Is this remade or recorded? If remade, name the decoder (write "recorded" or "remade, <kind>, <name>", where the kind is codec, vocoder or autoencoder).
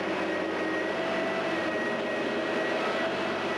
recorded